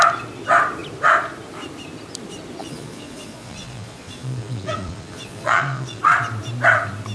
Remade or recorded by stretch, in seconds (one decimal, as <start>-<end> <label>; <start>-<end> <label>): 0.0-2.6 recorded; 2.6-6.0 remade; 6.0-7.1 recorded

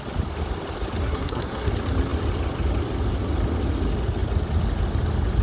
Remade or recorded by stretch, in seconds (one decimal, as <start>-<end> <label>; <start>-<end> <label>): 0.0-1.0 recorded; 1.0-1.7 remade; 1.7-5.4 recorded

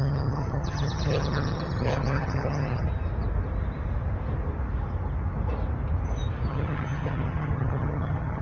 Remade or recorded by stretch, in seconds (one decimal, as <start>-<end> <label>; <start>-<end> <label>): 0.0-2.9 remade; 2.9-6.5 recorded; 6.5-8.4 remade

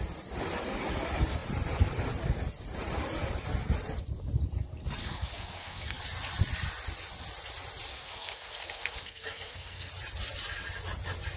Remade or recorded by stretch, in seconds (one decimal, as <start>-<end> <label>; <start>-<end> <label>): 0.0-5.0 recorded; 5.0-6.0 remade; 6.0-7.9 recorded; 7.9-9.9 remade; 9.9-11.4 recorded

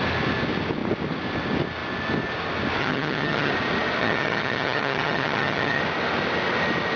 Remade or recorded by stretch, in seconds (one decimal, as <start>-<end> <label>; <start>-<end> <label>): 0.0-2.8 recorded; 2.8-3.5 remade; 3.5-4.0 recorded; 4.0-5.8 remade; 5.8-7.0 recorded

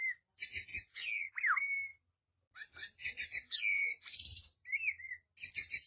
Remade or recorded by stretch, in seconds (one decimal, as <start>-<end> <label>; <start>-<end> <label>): 0.0-5.9 recorded

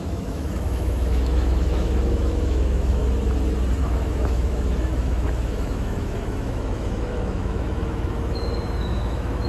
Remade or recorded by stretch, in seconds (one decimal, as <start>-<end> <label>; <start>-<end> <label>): 0.0-3.0 remade; 3.0-3.8 recorded; 3.8-9.5 remade